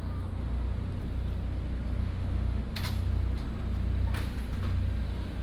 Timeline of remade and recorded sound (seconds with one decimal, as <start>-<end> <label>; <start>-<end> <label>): 0.0-2.0 recorded; 2.0-2.6 remade; 2.6-5.4 recorded